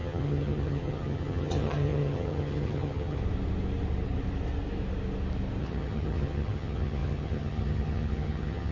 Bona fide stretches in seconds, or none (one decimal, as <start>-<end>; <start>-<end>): 3.2-5.6